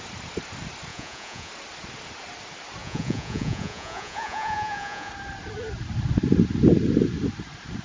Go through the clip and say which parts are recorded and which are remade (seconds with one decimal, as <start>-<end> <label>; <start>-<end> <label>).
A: 0.0-0.9 recorded; 0.9-1.5 remade; 1.5-2.8 recorded; 2.8-5.1 remade; 5.1-7.8 recorded